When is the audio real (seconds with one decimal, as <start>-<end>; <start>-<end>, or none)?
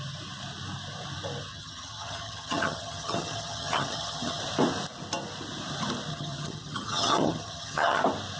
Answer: 0.0-1.5; 4.4-6.1; 8.0-8.4